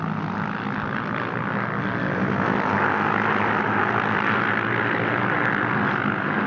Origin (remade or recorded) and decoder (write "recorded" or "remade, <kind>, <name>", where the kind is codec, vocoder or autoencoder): recorded